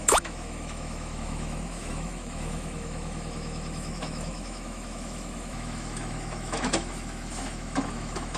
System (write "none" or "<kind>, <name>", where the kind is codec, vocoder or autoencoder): autoencoder, DAC-VAE